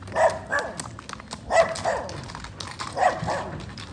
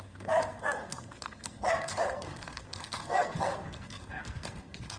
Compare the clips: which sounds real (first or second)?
first